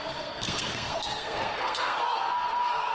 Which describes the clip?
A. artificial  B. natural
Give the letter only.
A